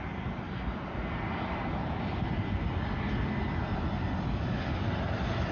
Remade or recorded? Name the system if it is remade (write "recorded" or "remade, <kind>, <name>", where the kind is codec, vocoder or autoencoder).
recorded